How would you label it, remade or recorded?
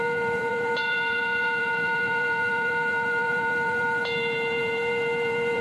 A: remade